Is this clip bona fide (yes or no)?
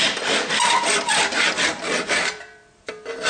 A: yes